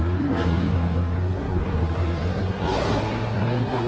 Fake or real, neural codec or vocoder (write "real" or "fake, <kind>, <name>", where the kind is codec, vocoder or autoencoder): fake, codec, SNAC